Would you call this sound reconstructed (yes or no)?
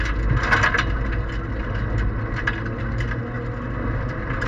no